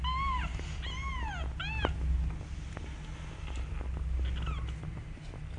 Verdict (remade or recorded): recorded